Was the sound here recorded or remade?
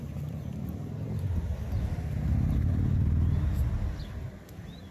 recorded